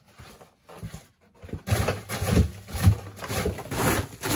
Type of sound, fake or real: real